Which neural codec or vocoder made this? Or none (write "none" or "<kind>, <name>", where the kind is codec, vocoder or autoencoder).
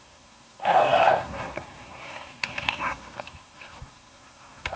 codec, SNAC